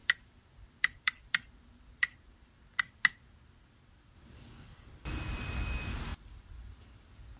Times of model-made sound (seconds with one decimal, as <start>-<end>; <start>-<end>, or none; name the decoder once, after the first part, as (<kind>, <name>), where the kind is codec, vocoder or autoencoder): 0.0-2.8 (vocoder, BigVGAN v2); 6.1-7.4